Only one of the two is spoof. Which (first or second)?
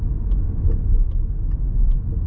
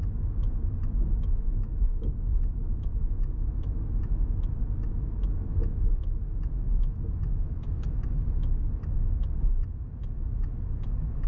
second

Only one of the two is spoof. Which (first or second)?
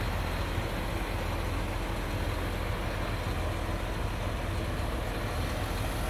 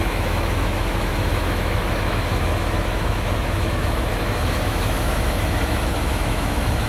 second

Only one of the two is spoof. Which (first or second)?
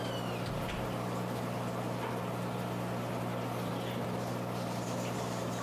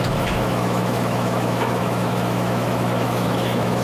second